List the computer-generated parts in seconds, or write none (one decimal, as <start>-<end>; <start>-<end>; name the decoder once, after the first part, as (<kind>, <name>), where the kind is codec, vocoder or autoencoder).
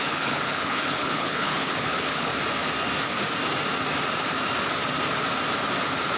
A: 0.0-2.3 (codec, HILCodec)